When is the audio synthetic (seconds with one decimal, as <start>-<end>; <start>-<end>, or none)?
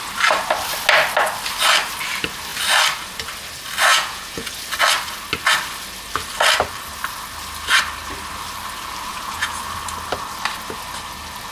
3.9-4.5; 9.1-9.6